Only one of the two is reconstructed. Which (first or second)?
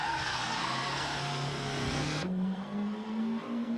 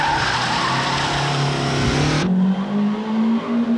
first